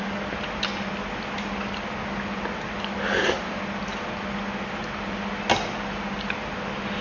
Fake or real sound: real